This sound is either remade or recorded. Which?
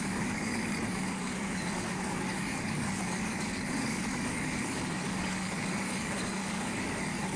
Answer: remade